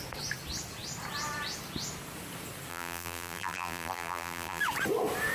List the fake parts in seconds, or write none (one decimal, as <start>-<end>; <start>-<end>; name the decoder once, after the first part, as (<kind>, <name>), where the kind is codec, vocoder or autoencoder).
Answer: 2.7-4.6 (vocoder, BigVGAN v2)